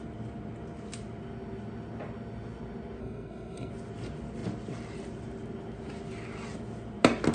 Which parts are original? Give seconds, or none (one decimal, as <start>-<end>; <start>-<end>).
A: 0.0-3.0; 3.7-7.3